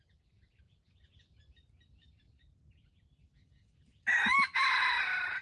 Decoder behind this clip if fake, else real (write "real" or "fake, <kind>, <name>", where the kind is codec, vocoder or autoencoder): fake, vocoder, BigVGAN v2